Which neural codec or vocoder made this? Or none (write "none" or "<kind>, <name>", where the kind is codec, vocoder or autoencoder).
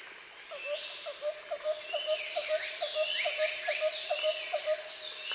none